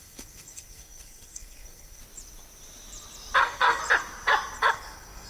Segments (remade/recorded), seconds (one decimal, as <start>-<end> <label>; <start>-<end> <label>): 0.0-2.0 remade; 2.0-3.4 recorded; 3.4-3.8 remade; 3.8-4.7 recorded; 4.7-5.3 remade